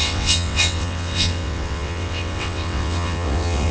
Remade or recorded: remade